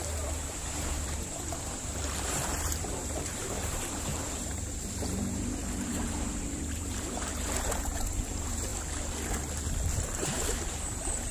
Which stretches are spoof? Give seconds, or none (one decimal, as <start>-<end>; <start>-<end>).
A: 0.0-8.7; 10.0-11.3

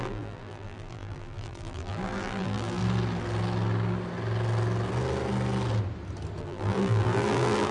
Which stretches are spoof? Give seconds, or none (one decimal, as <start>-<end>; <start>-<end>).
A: 0.0-2.8; 6.4-7.7

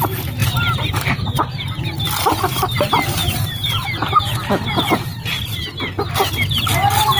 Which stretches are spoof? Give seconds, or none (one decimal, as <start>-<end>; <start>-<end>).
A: 0.4-1.4; 3.2-4.2

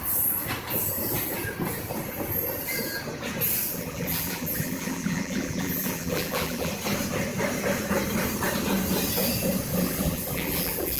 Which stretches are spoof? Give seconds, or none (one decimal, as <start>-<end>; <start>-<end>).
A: 3.7-6.7; 9.7-11.0

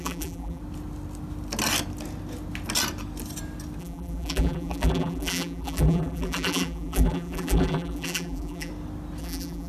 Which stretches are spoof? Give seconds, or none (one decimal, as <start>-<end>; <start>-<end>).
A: 0.0-0.6; 3.8-8.7; 9.2-9.7

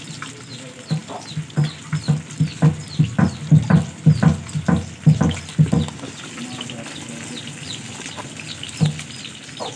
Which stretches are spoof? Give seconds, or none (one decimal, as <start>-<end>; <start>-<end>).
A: none

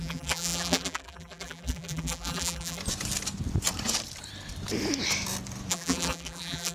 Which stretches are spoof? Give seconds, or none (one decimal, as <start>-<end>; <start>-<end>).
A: 0.0-2.8; 5.7-6.7

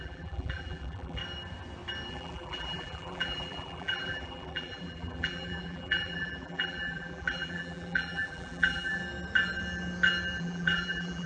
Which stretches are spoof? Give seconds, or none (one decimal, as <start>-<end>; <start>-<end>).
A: 0.0-1.2; 2.1-9.0; 10.4-11.3